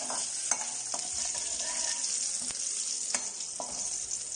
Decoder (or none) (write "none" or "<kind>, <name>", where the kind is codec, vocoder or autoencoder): none